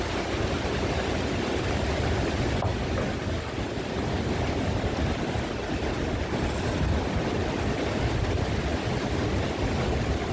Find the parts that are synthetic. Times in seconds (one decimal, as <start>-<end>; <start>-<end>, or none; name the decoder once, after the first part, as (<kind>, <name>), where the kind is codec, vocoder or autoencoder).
none